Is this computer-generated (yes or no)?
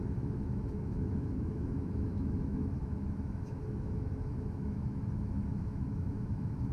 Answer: yes